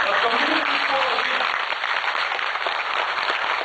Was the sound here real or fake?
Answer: fake